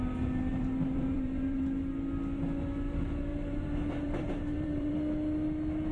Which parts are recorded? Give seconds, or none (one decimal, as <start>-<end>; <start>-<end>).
0.0-0.5; 1.6-3.3; 4.9-5.9